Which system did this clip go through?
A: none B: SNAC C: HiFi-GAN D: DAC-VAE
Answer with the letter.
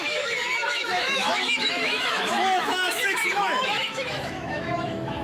D